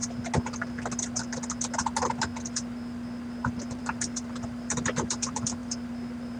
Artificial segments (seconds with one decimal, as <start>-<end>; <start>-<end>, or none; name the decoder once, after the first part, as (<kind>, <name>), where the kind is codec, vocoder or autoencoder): 3.8-5.6 (vocoder, BigVGAN v2)